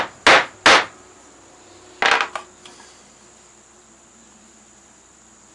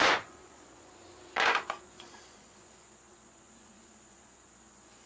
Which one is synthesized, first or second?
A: second